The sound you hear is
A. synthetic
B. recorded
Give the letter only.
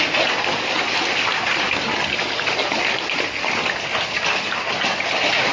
B